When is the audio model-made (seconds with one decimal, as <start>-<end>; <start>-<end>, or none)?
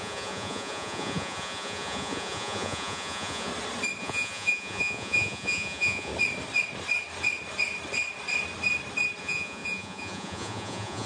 0.0-3.5; 4.0-6.1; 9.2-11.1